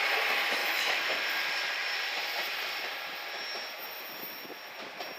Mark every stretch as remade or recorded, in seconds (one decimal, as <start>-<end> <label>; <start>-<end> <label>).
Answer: 0.0-0.6 recorded; 0.6-1.4 remade; 1.4-5.2 recorded